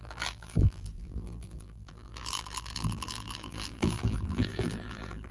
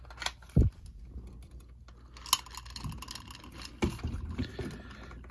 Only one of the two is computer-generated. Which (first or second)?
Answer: first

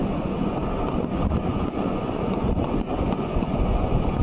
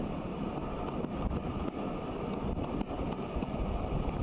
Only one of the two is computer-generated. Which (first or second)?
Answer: first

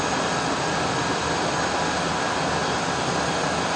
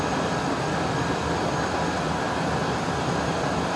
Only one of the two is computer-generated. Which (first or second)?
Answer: second